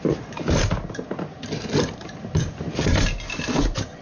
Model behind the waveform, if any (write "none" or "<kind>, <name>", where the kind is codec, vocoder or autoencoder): none